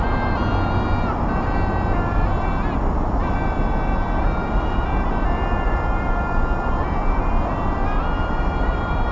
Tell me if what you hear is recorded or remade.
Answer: recorded